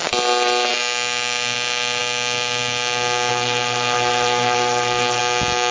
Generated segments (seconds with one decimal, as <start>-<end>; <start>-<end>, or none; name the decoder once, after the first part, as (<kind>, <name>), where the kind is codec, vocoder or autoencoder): 3.3-5.2 (codec, SNAC)